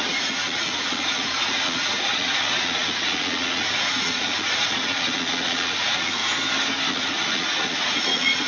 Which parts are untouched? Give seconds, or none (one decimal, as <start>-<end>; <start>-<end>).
6.2-6.9

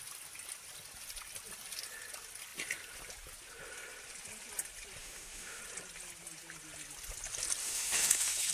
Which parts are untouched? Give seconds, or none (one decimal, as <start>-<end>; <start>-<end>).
0.0-5.0; 5.6-7.6